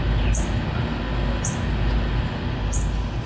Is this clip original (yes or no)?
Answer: yes